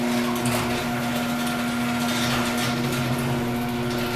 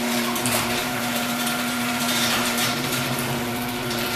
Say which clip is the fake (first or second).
second